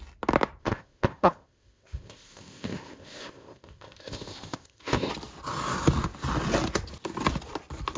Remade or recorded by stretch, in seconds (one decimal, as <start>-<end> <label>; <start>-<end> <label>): 0.0-0.6 recorded; 0.6-5.1 remade; 5.1-8.0 recorded